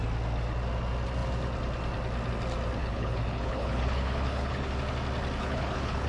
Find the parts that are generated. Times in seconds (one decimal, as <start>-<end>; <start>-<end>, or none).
2.8-4.7; 5.4-6.1